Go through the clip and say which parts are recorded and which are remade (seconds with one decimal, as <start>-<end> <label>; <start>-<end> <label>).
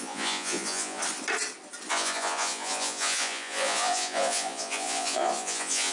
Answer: 0.0-1.0 remade; 1.0-1.9 recorded; 1.9-5.9 remade